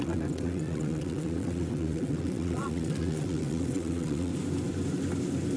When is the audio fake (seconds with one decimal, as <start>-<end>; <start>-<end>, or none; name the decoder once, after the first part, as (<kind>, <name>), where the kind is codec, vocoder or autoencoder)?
0.0-4.3 (vocoder, WaveNeXt)